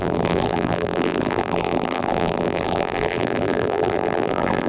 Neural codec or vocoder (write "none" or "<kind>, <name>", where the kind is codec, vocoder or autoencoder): vocoder, BigVGAN v2